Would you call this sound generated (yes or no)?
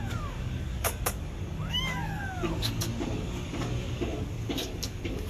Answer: yes